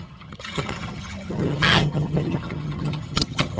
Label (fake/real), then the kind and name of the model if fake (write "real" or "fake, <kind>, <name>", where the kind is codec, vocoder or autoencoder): fake, vocoder, HiFi-GAN